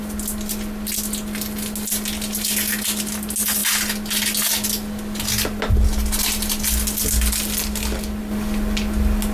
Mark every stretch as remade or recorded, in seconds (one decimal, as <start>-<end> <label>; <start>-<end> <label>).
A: 0.0-9.3 recorded